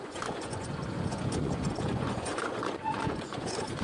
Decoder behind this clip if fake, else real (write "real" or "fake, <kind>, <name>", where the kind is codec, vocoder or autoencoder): fake, vocoder, Vocos